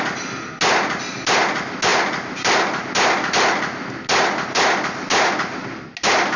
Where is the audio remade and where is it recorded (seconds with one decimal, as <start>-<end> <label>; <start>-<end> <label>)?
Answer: 0.0-6.4 recorded

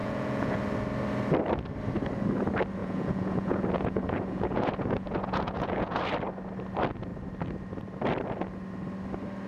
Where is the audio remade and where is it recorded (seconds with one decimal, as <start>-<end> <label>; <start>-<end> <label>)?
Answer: 0.0-0.6 remade; 0.6-2.8 recorded; 2.8-6.0 remade; 6.0-9.5 recorded

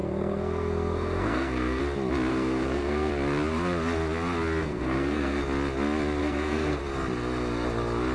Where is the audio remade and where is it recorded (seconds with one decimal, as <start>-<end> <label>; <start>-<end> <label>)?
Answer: 0.0-1.8 remade; 1.8-2.3 recorded; 2.3-3.1 remade; 3.1-4.6 recorded; 4.6-5.4 remade; 5.4-6.2 recorded; 6.2-6.8 remade; 6.8-8.1 recorded

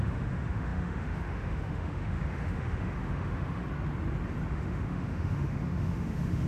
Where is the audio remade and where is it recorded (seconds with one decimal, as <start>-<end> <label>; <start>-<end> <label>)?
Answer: 0.0-3.6 remade; 3.6-4.5 recorded; 4.5-6.5 remade

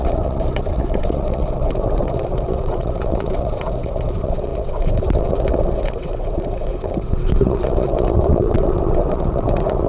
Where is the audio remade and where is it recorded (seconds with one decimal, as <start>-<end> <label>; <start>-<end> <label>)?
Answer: 0.0-9.9 remade

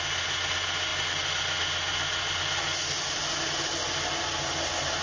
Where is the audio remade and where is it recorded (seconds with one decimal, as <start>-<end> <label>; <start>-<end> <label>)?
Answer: 0.0-5.0 recorded